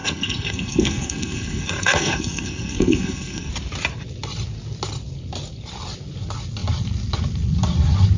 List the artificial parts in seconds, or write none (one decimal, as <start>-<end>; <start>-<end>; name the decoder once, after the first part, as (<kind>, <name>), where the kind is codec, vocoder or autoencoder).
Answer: 0.0-3.5 (codec, SNAC)